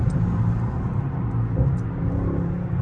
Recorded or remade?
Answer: recorded